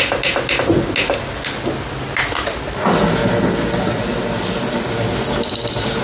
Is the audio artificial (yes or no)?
no